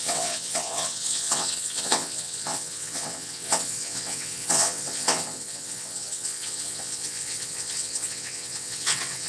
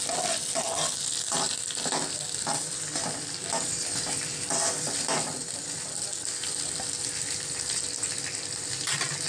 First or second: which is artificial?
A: first